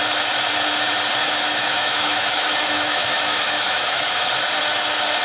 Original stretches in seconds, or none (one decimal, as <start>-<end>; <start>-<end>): 0.0-1.2; 4.3-5.2